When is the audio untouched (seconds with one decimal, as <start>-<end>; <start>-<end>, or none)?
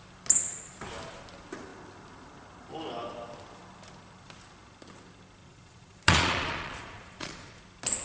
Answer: 0.0-5.4; 7.6-8.0